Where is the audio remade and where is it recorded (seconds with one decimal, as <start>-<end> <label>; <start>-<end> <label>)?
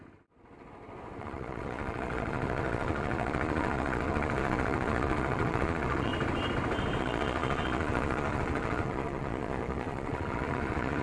0.0-1.2 recorded; 1.2-6.1 remade; 6.1-7.0 recorded; 7.0-11.0 remade